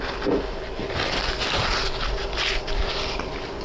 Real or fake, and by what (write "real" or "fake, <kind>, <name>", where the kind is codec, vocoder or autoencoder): real